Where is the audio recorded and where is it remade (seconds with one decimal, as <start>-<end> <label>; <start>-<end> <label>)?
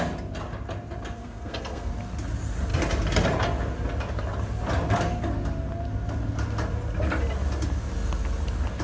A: 0.0-1.2 recorded; 1.2-1.9 remade; 1.9-8.8 recorded